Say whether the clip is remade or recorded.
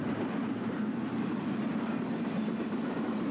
recorded